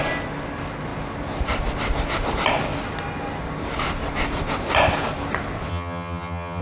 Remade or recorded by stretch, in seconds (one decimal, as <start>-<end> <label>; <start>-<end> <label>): 0.0-5.7 recorded; 5.7-6.6 remade